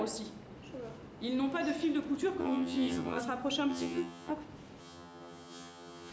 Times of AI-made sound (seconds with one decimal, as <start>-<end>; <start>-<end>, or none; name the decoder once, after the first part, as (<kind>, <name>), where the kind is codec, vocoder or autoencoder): 2.4-3.2 (vocoder, HiFi-GAN); 3.7-4.3; 4.8-6.1